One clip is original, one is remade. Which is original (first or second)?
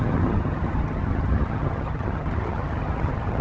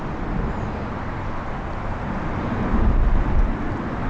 second